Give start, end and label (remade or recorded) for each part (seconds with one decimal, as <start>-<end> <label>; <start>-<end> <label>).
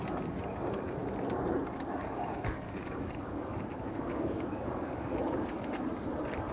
0.0-2.0 recorded; 2.0-5.7 remade; 5.7-6.5 recorded